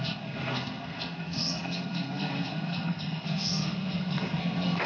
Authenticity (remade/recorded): remade